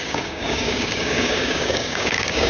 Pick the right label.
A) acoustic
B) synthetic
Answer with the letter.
B